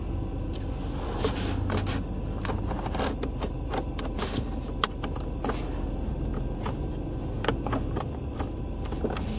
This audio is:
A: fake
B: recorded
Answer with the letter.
B